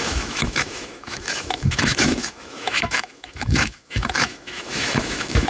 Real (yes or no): no